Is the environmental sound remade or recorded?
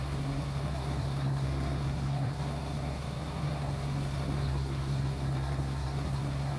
remade